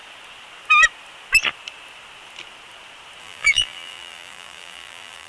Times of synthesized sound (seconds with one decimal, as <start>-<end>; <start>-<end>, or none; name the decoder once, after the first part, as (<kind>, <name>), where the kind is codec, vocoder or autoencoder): 3.2-5.3 (vocoder, BigVGAN v2)